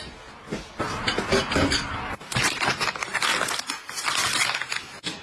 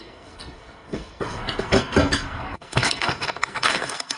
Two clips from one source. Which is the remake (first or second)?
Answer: second